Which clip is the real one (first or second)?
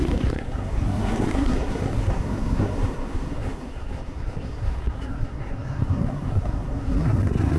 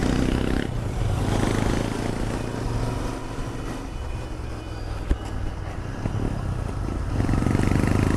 second